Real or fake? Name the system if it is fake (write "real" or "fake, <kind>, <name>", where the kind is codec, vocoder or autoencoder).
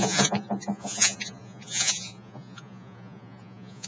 fake, vocoder, Vocos